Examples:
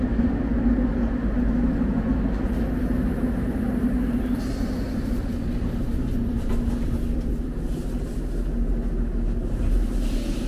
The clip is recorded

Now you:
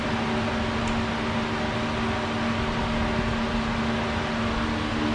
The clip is recorded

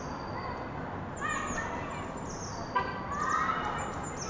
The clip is recorded